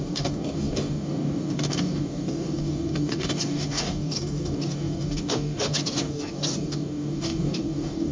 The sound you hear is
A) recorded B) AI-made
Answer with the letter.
B